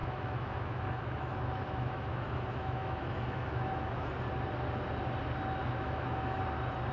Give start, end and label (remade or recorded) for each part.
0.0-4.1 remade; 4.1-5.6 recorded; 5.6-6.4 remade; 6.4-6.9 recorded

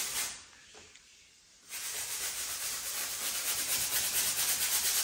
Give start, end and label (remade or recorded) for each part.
0.0-0.6 recorded; 0.6-3.6 remade; 3.6-5.0 recorded

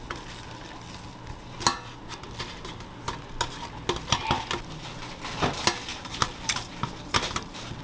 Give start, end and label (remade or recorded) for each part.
0.0-5.9 recorded; 5.9-7.8 remade

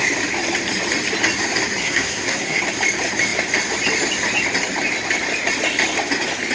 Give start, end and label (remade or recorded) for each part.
0.0-1.8 recorded; 1.8-2.6 remade; 2.6-6.5 recorded

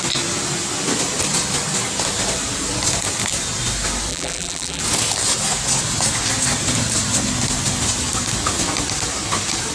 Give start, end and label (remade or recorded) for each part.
0.0-4.1 recorded; 4.1-4.8 remade; 4.8-9.7 recorded